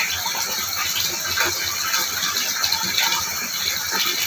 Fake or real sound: real